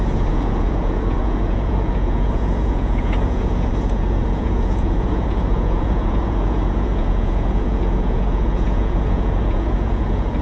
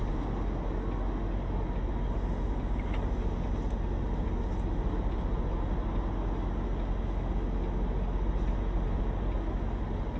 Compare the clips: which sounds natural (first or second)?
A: second